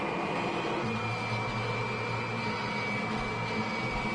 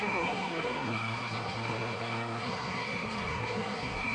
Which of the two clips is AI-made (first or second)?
second